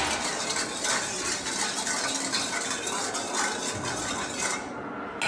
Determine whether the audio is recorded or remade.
recorded